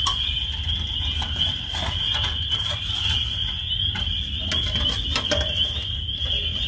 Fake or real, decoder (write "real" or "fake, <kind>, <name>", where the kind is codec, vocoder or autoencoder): real